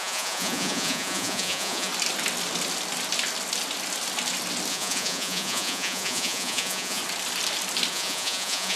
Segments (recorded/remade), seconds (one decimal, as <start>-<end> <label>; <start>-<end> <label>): 0.0-1.9 remade; 1.9-4.7 recorded; 4.7-7.0 remade; 7.0-7.9 recorded; 7.9-8.8 remade